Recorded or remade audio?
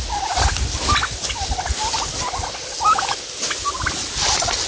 recorded